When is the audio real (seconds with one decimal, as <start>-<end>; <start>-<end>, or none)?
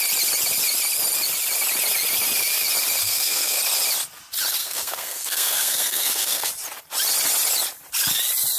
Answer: 0.0-3.0; 3.6-4.6; 6.5-8.6